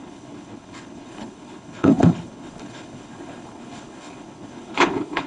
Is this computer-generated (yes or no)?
yes